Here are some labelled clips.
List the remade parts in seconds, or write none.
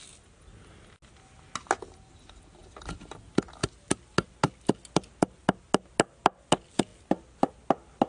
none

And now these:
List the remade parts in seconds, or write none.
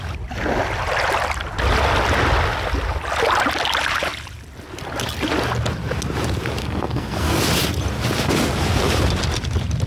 6.6-7.4 (codec, SNAC)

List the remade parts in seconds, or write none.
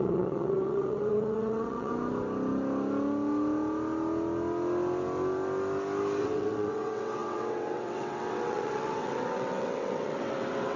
0.0-1.9 (vocoder, WaveNeXt); 6.2-10.8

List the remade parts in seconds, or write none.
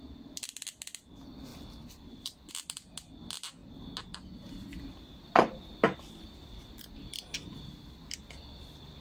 1.5-2.5 (vocoder, BigVGAN v2)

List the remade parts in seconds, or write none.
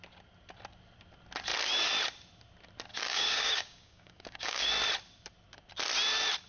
2.9-4.7 (codec, DAC)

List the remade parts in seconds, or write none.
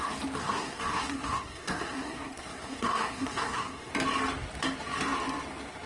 0.4-3.9 (codec, SNAC)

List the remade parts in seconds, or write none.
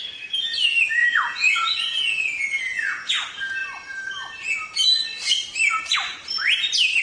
1.0-3.1 (vocoder, Vocos)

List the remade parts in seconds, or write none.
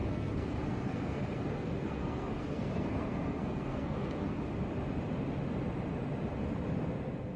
0.0-4.4 (codec, SNAC)